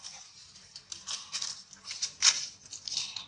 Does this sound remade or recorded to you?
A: recorded